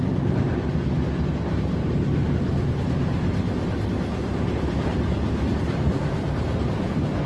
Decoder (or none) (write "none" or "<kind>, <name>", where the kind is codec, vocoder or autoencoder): none